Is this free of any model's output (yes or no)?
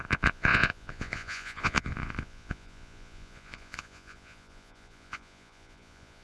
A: no